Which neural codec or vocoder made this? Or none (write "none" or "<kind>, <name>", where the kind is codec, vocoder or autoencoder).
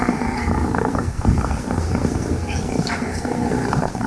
codec, SNAC